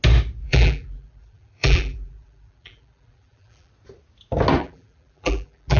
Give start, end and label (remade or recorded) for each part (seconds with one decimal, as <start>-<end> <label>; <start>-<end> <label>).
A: 0.0-0.4 recorded; 0.4-3.7 remade; 3.7-4.6 recorded; 4.6-5.8 remade